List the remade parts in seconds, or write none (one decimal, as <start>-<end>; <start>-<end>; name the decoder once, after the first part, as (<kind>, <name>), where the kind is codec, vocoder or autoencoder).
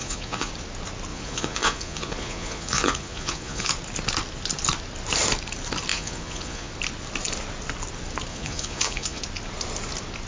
0.0-0.5 (vocoder, Vocos); 1.1-3.7; 5.9-6.7; 8.3-9.2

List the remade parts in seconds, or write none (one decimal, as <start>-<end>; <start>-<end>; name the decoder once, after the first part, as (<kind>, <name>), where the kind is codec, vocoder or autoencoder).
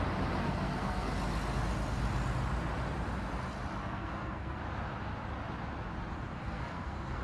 0.4-1.1 (codec, SNAC); 3.8-4.6; 6.4-7.2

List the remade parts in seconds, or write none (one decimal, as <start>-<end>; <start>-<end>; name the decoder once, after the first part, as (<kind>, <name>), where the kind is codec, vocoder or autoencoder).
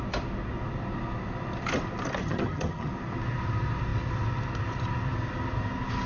2.2-2.9 (vocoder, HiFi-GAN)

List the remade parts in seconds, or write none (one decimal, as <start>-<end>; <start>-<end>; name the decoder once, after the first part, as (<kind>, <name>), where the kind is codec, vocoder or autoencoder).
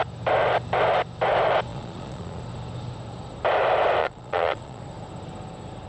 1.7-2.4 (vocoder, Vocos); 4.0-4.8